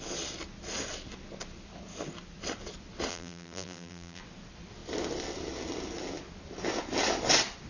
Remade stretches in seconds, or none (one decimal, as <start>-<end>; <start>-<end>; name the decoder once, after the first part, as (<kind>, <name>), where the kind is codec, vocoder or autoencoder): 3.1-4.2 (vocoder, BigVGAN v2)